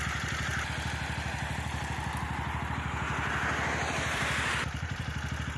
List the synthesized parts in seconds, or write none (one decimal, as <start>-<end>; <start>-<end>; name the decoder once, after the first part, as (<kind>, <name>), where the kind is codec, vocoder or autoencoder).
0.0-0.5 (vocoder, BigVGAN v2); 3.9-5.6